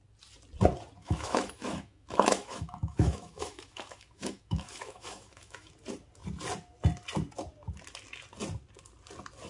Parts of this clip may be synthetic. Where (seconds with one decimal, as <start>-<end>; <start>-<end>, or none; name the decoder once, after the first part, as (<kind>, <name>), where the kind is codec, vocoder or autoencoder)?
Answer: 1.0-5.7 (autoencoder, DAC-VAE)